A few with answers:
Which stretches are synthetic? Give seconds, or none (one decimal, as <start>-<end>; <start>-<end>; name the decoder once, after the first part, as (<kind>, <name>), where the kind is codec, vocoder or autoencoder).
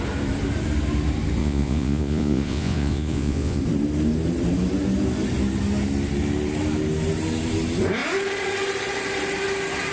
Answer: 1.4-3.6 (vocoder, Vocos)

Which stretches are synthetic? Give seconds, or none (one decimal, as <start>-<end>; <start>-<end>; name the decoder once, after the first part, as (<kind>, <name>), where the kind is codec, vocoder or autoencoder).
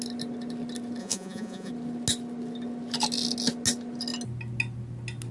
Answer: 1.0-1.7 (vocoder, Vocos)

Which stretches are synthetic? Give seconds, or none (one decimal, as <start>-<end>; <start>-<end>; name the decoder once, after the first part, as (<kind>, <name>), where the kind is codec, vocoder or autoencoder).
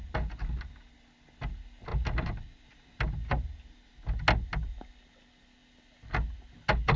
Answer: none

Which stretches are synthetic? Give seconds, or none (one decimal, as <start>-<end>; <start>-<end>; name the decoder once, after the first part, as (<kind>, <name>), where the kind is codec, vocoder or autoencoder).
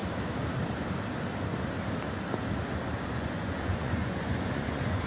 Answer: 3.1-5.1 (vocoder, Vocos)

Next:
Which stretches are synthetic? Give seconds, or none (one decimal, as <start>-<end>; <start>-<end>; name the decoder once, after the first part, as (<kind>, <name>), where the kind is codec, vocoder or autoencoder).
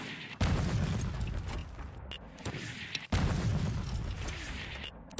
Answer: none